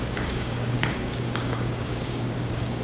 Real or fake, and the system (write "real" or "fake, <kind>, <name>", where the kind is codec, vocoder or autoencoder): fake, codec, DAC